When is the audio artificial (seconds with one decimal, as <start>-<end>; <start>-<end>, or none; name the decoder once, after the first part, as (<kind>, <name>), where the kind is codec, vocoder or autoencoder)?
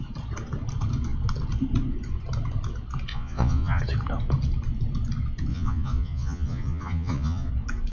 3.1-3.8 (vocoder, Vocos); 5.5-7.5